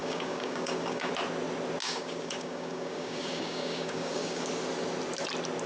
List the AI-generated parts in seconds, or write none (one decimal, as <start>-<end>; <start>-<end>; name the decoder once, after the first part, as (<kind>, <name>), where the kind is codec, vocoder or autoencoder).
0.0-1.1 (codec, DAC); 1.8-4.4